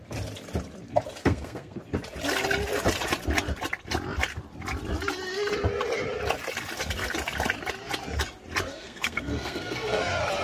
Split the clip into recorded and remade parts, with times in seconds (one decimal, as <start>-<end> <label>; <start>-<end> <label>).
0.0-1.2 recorded; 1.2-1.8 remade; 1.8-8.7 recorded; 8.7-10.0 remade; 10.0-10.4 recorded